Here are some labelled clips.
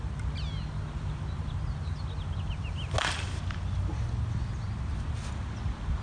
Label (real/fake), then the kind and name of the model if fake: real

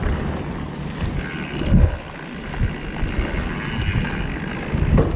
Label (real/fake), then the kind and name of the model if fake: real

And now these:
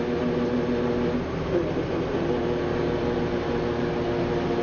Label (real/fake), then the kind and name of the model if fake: real